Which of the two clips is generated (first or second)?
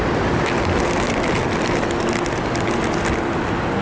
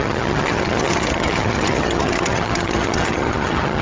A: second